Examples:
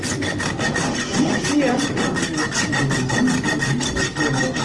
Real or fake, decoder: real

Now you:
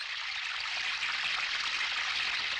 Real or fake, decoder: real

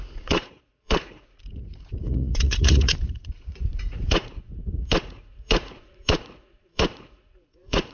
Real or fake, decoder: fake, vocoder, Vocos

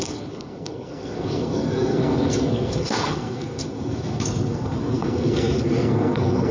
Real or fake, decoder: fake, codec, SNAC